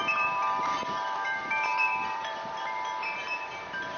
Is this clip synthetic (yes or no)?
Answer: yes